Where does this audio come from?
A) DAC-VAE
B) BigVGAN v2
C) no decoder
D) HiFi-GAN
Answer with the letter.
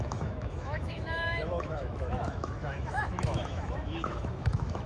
A